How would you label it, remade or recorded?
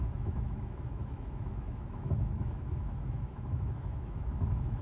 remade